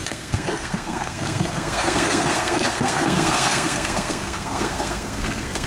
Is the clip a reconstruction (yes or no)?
yes